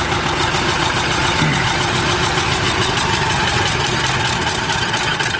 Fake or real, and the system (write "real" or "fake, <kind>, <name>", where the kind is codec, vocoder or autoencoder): real